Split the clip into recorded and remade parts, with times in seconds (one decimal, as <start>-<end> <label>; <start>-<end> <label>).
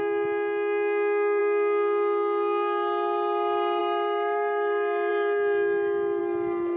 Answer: 0.0-6.8 recorded